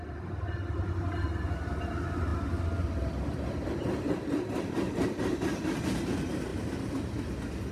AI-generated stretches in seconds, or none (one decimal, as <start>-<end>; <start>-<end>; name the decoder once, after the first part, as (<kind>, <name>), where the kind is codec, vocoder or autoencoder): 2.3-5.8 (vocoder, BigVGAN v2)